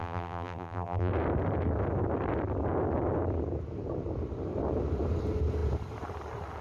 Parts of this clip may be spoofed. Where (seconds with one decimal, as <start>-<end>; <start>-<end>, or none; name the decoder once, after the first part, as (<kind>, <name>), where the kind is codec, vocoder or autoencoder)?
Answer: 0.0-1.1 (vocoder, BigVGAN v2)